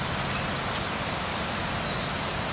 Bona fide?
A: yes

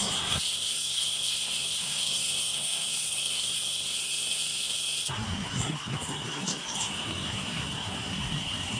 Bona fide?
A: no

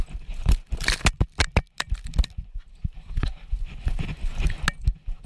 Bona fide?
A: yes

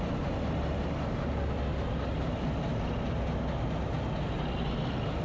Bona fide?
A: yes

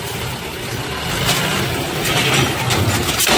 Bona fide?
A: yes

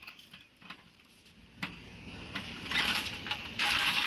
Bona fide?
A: no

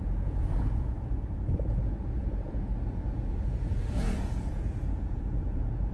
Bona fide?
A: no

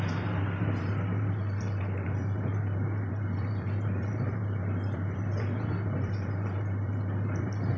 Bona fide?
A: no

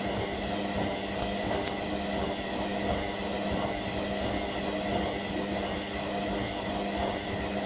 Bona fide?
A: yes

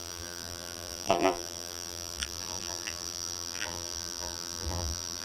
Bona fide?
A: no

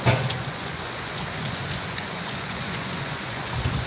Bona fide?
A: no